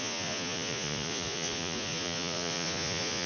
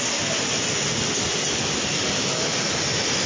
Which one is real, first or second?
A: second